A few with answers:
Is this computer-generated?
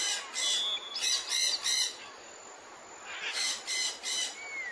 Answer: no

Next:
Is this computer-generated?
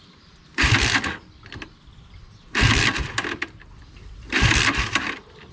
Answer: yes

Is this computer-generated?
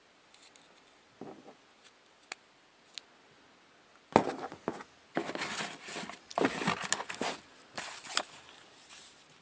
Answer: no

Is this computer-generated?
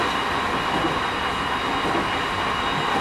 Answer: no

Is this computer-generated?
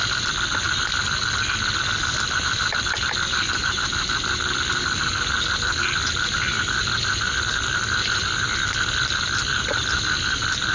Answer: no